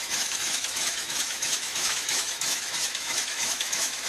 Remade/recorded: remade